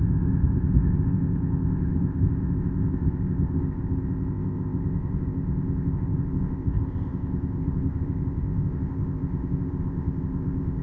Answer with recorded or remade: remade